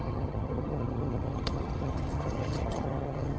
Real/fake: fake